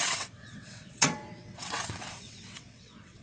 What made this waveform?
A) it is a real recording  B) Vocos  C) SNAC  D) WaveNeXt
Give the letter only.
D